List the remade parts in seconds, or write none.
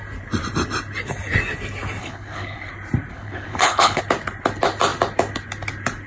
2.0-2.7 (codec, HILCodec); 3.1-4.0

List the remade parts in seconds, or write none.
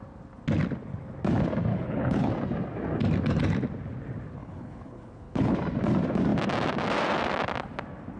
1.7-2.3 (codec, HILCodec); 4.4-5.6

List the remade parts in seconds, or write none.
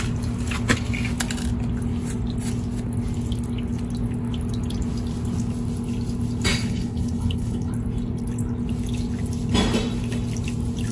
6.5-7.7 (codec, HILCodec)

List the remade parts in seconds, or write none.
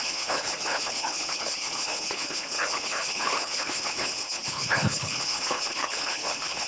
0.0-6.7 (codec, HILCodec)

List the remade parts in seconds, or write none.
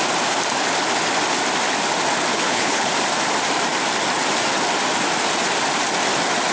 2.3-2.9 (codec, HILCodec)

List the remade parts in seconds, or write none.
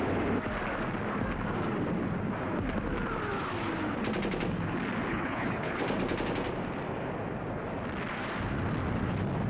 5.1-5.8 (codec, HILCodec)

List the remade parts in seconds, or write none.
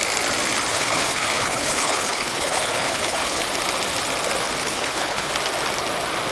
0.7-3.4 (codec, HILCodec); 4.6-5.3